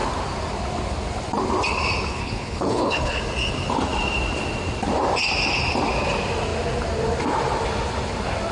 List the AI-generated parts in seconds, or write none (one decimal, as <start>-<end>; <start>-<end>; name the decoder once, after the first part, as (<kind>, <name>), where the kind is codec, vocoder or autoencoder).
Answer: 2.1-3.2 (codec, HILCodec)